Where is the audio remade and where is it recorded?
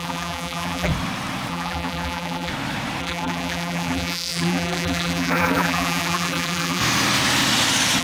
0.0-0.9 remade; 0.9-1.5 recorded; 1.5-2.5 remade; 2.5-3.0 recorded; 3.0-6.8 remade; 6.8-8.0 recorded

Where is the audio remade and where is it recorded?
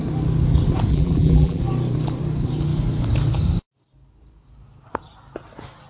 0.0-0.9 recorded; 0.9-1.6 remade; 1.6-5.9 recorded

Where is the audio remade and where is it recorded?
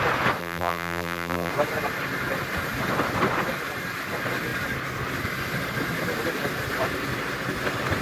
0.0-0.4 recorded; 0.4-1.5 remade; 1.5-8.0 recorded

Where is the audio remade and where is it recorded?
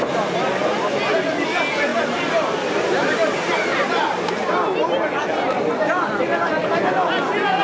0.0-1.9 recorded; 1.9-5.0 remade; 5.0-7.6 recorded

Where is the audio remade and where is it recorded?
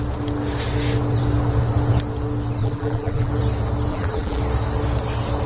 0.0-2.6 recorded; 2.6-3.3 remade; 3.3-3.9 recorded; 3.9-4.4 remade; 4.4-5.5 recorded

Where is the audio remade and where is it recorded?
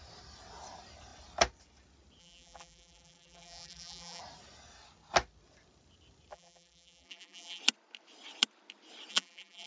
0.0-2.2 recorded; 2.2-4.2 remade; 4.2-6.3 recorded; 6.3-7.6 remade; 7.6-9.1 recorded; 9.1-9.7 remade